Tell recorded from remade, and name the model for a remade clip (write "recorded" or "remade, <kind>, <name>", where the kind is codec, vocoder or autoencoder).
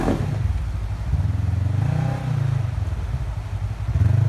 recorded